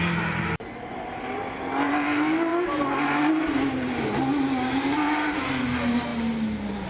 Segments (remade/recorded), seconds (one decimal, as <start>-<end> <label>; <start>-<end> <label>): 0.0-6.9 recorded